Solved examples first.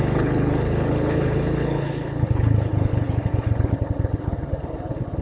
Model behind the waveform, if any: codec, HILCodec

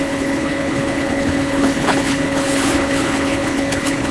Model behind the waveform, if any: codec, HILCodec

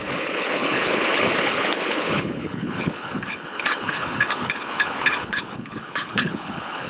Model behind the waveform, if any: codec, HILCodec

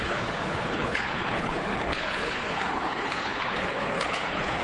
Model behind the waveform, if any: codec, HILCodec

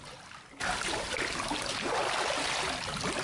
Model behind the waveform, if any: none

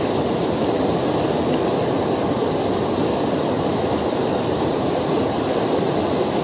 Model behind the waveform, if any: none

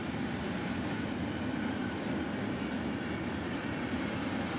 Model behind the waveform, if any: none